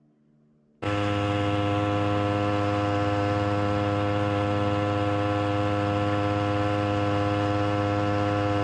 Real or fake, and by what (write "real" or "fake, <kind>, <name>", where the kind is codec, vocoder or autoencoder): real